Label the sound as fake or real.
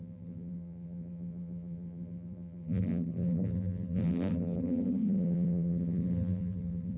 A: fake